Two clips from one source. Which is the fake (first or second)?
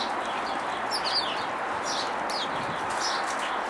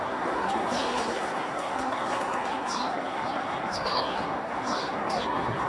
second